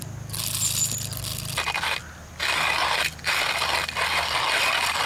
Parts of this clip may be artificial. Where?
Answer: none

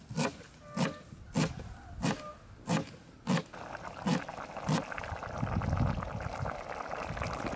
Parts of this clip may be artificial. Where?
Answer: none